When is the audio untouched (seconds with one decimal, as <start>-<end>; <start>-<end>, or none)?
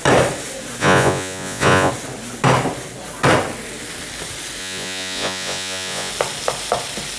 0.0-0.8; 1.9-4.6; 6.1-7.2